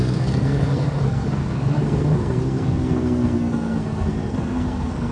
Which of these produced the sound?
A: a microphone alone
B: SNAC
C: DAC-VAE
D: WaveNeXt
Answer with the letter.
B